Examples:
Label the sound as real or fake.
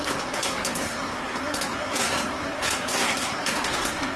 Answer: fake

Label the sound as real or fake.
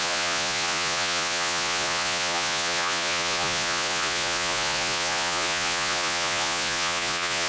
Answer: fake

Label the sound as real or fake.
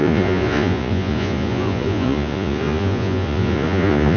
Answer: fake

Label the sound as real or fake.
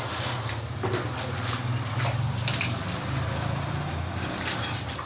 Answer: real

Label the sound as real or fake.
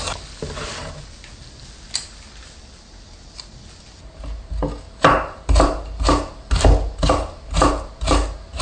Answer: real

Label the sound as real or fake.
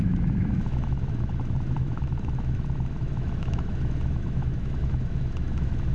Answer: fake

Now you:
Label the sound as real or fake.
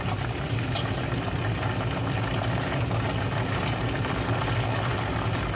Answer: real